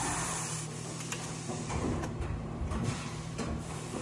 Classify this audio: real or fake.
fake